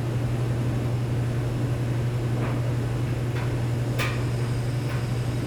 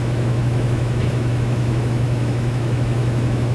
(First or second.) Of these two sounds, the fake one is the second